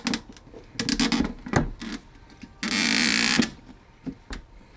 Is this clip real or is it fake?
real